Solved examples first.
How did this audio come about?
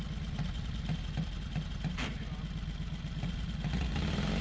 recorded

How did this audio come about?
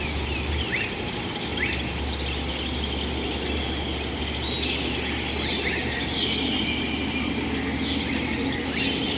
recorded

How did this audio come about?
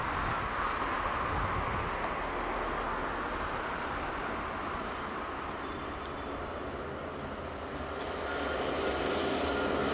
recorded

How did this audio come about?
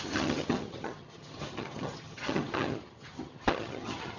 remade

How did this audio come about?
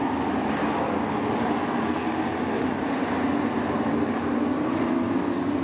recorded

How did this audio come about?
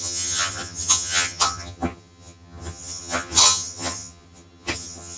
remade